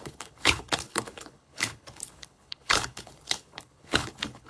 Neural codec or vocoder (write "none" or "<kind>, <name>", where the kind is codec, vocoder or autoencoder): codec, HILCodec